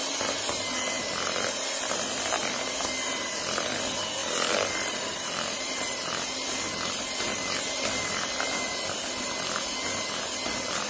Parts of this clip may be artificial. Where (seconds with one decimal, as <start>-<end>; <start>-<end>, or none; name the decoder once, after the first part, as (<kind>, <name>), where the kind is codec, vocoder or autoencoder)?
4.2-9.2 (vocoder, BigVGAN v2)